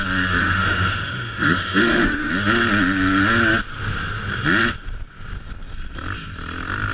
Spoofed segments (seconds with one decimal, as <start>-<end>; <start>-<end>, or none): 0.4-2.3